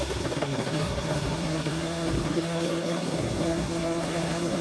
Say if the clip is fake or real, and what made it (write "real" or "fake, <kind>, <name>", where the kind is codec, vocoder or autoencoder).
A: fake, codec, SNAC